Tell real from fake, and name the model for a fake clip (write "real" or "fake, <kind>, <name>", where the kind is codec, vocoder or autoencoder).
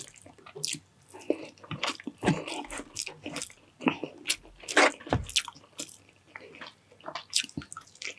real